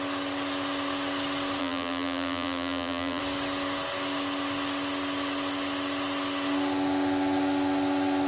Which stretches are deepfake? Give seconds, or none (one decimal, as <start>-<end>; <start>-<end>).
1.6-3.2